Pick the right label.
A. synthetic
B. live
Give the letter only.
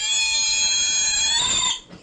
B